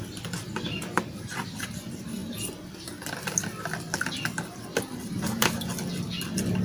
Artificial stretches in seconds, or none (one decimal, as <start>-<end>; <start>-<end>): 5.1-5.6